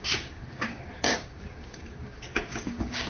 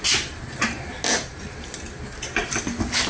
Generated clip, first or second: first